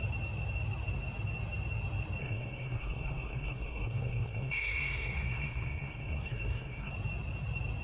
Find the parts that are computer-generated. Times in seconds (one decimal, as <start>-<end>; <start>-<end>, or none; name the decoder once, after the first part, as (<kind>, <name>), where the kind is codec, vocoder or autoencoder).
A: 2.2-6.9 (codec, SNAC)